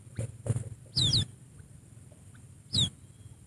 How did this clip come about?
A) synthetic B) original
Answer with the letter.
B